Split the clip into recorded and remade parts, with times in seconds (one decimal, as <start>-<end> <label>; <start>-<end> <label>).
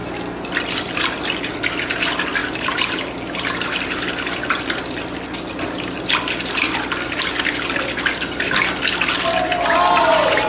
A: 0.0-10.5 recorded